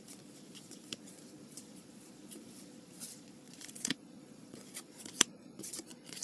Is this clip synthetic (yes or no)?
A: yes